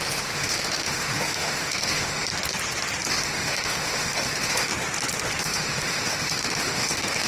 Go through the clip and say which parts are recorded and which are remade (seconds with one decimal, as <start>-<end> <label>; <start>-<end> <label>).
0.0-2.3 remade; 2.3-3.1 recorded; 3.1-4.7 remade; 4.7-5.4 recorded; 5.4-7.3 remade